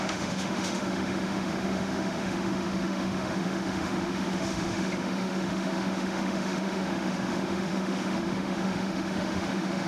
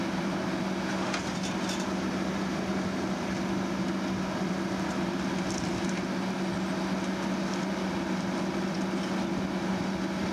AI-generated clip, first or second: first